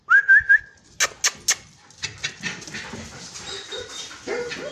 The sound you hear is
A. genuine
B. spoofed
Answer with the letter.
A